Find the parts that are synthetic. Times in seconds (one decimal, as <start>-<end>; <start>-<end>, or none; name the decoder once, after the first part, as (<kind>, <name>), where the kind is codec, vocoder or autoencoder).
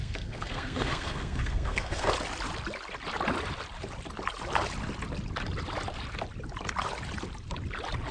0.0-2.1 (codec, SNAC)